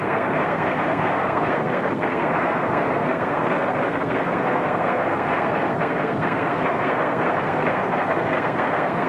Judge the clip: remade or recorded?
remade